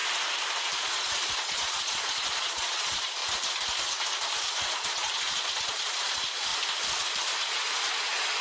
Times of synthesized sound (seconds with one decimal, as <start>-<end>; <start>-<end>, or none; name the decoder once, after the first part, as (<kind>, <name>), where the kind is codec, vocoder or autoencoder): 0.8-3.2 (vocoder, Vocos); 4.6-6.5